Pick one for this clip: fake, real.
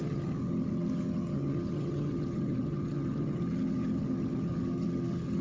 fake